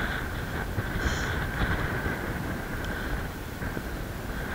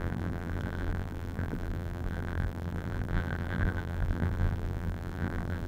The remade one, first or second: second